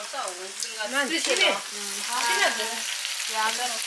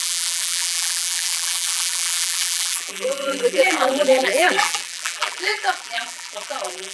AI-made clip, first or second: second